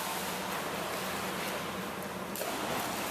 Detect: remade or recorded recorded